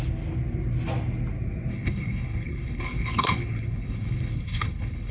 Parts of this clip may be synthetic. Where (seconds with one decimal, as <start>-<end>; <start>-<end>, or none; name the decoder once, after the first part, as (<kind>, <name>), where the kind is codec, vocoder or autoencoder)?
1.7-5.1 (codec, HILCodec)